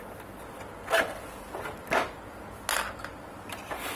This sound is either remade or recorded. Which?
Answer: recorded